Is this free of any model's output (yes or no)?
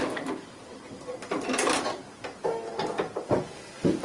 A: yes